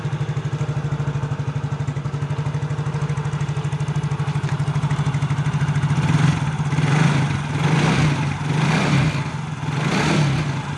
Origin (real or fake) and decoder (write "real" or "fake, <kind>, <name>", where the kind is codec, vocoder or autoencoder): real